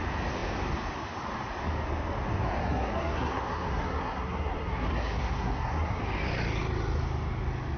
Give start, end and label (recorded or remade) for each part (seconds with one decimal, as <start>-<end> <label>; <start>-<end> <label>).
0.0-2.6 recorded; 2.6-6.0 remade; 6.0-7.8 recorded